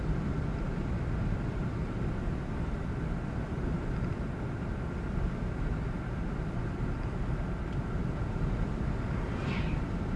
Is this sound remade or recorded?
recorded